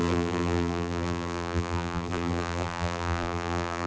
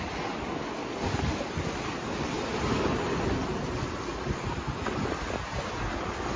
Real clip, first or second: second